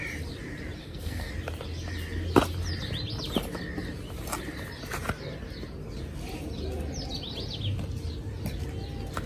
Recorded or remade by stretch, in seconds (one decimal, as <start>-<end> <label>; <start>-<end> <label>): 0.0-0.8 recorded; 0.8-1.3 remade; 1.3-9.3 recorded